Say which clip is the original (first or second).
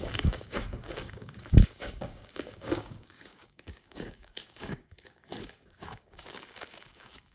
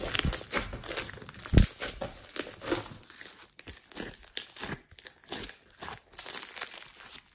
second